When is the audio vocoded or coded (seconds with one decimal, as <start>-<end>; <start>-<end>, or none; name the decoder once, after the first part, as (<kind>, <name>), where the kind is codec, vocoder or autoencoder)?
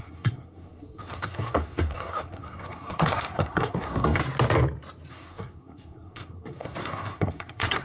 0.0-4.2 (codec, SNAC); 5.1-7.8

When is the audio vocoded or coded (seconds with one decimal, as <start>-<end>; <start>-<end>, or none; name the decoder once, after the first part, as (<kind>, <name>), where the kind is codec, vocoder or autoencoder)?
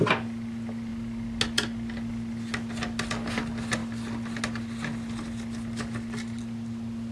none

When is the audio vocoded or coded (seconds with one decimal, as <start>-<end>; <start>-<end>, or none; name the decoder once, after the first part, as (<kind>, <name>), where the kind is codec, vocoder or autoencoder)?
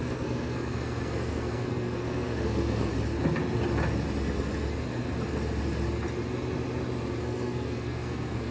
0.0-2.9 (codec, SNAC); 7.2-8.5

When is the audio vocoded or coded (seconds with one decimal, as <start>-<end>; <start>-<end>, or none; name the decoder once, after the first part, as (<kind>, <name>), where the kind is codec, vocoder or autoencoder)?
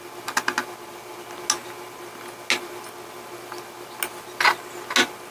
none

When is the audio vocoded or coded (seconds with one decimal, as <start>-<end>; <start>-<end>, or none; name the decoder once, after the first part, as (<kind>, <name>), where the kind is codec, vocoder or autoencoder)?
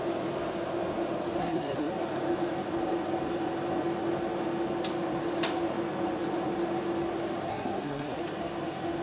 1.4-1.9 (codec, SNAC); 7.5-8.2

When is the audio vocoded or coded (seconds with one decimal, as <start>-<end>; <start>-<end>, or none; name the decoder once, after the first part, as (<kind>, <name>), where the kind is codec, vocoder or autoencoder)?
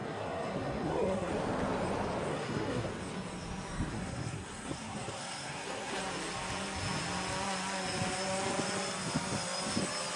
0.0-1.3 (codec, SNAC); 2.3-2.9; 3.9-6.0